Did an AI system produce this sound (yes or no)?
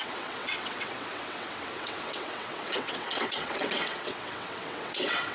yes